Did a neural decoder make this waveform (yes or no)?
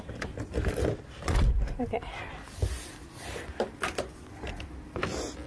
no